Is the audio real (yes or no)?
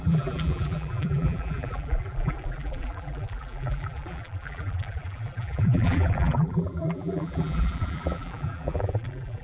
no